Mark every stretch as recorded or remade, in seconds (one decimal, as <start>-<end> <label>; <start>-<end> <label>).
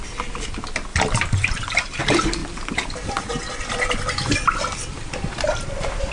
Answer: 0.0-0.9 recorded; 0.9-2.0 remade; 2.0-2.4 recorded; 2.4-6.1 remade